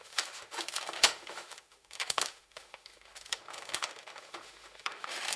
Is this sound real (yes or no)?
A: no